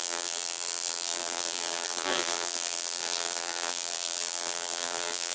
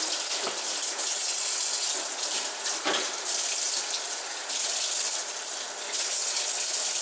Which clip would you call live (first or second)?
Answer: second